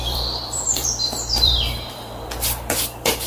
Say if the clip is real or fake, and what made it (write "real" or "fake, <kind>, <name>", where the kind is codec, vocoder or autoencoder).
fake, vocoder, BigVGAN v2